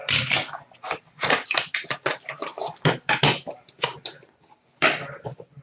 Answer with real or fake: real